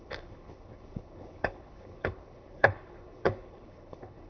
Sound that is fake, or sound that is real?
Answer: fake